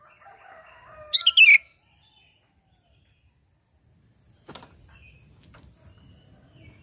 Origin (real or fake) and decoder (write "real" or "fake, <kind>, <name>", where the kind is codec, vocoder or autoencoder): real